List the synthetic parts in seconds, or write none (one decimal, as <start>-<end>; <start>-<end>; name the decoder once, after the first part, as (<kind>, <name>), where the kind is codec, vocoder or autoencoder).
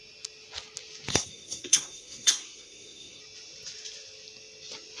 1.1-3.2 (codec, SNAC)